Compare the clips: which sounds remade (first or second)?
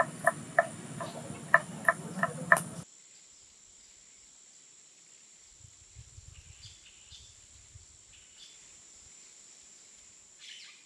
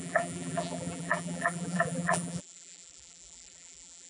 second